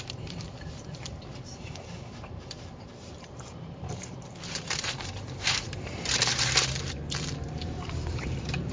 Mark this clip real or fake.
fake